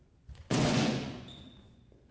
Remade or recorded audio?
remade